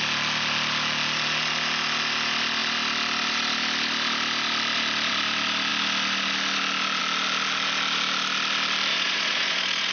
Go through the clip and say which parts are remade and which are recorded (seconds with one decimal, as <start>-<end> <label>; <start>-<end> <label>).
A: 0.0-8.9 recorded; 8.9-9.9 remade